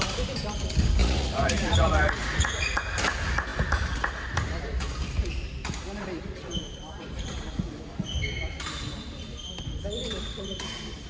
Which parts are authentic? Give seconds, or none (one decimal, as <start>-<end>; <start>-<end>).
0.0-1.0; 2.8-11.1